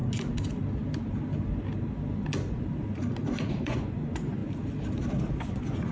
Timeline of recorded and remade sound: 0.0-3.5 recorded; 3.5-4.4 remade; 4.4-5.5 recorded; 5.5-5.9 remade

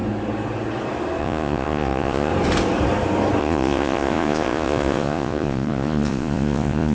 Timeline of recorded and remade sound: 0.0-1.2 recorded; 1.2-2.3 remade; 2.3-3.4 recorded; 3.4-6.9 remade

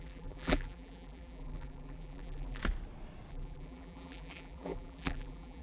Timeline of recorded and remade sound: 0.0-2.6 remade; 2.6-3.3 recorded; 3.3-5.6 remade

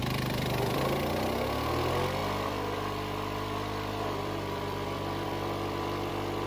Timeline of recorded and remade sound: 0.0-0.8 remade; 0.8-2.2 recorded; 2.2-6.1 remade; 6.1-6.5 recorded